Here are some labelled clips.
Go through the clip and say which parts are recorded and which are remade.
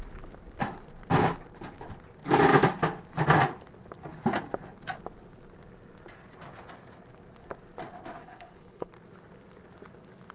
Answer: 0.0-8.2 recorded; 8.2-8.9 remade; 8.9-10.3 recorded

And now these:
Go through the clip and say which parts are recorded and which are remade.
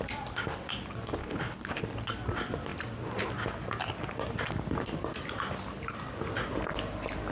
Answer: 0.0-1.2 recorded; 1.2-1.8 remade; 1.8-7.3 recorded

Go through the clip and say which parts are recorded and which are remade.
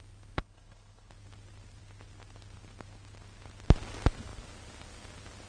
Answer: 0.0-0.4 recorded; 0.4-1.1 remade; 1.1-5.5 recorded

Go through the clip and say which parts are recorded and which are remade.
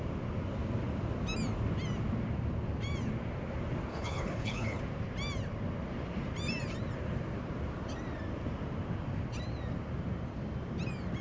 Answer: 0.0-3.9 recorded; 3.9-4.8 remade; 4.8-11.2 recorded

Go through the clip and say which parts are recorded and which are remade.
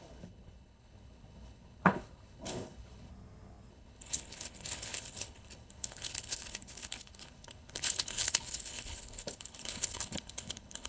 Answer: 0.0-3.1 remade; 3.1-3.7 recorded; 3.7-10.9 remade